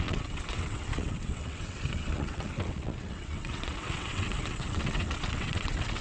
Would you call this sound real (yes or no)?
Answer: no